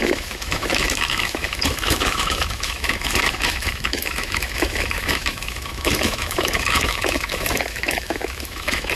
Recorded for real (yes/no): no